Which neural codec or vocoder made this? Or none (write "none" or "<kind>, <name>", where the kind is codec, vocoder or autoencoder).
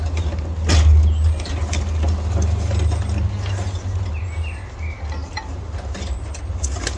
none